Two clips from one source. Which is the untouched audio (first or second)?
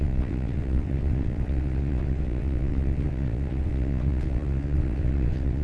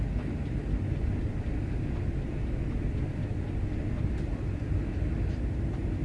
second